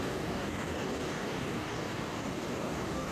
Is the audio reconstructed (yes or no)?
yes